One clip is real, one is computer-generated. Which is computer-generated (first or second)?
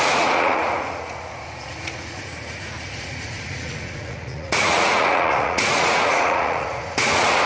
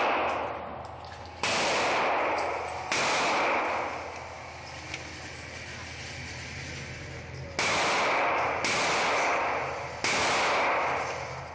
first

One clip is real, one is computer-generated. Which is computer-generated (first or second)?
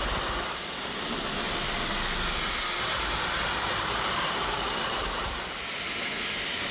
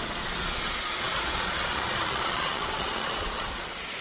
second